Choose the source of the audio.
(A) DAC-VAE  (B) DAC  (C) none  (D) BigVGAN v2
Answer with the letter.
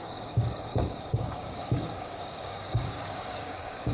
B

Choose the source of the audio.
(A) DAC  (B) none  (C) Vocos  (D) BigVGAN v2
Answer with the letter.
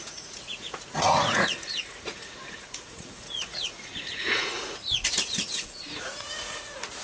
C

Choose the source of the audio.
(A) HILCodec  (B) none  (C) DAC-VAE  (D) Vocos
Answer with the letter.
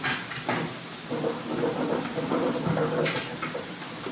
B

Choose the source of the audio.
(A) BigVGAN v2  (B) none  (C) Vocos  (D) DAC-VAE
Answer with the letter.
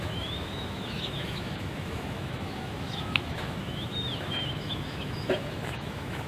D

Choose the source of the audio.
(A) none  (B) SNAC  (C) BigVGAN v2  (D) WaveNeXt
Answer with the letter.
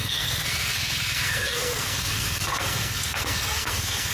B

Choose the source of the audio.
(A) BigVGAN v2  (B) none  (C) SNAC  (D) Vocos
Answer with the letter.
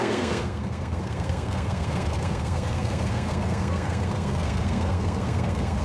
C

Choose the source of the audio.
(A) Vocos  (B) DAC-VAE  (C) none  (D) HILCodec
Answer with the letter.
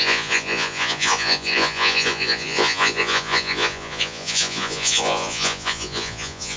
A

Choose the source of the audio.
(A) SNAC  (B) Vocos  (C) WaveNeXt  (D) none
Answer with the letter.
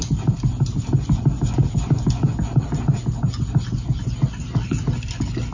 D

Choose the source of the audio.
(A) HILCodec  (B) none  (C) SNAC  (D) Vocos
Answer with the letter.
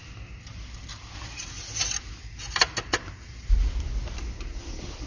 B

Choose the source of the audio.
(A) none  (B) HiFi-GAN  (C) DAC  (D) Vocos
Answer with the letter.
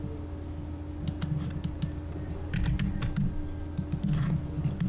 A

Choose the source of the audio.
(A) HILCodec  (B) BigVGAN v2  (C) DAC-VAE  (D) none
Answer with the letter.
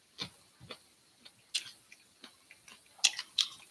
D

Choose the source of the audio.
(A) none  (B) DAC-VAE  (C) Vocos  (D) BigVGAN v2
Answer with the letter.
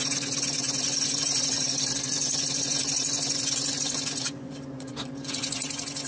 C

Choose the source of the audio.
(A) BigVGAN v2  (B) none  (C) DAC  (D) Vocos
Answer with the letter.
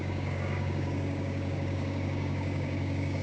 C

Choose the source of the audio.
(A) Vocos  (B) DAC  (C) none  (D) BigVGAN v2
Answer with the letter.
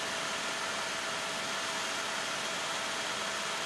C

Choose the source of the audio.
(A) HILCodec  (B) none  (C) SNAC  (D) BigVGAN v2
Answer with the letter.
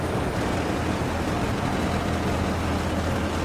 B